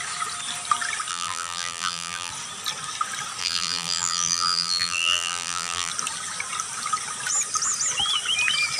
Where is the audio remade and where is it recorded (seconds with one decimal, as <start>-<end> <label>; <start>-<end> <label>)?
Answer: 0.0-1.1 recorded; 1.1-2.3 remade; 2.3-3.4 recorded; 3.4-5.9 remade; 5.9-8.8 recorded